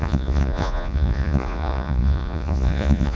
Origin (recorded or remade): remade